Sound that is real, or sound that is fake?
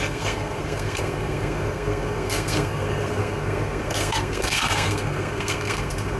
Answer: fake